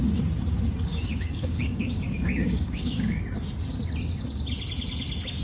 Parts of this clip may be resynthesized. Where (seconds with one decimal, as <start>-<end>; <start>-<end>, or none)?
0.9-3.2

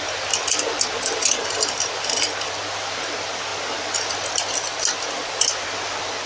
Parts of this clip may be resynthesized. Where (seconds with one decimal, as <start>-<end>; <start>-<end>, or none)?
none

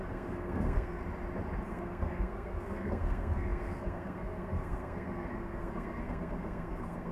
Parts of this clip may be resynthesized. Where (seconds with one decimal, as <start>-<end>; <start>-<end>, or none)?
0.0-1.0; 1.7-7.1

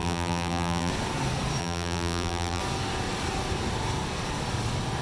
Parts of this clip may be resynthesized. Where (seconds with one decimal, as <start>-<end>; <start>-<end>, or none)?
0.0-0.9; 1.6-2.6